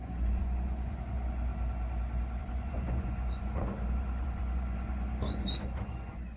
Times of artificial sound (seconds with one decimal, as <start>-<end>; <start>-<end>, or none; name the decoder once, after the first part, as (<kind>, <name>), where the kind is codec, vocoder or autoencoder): 0.0-1.5 (vocoder, Vocos); 2.4-6.4